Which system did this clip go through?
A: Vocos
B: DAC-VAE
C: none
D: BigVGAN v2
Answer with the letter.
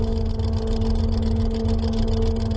C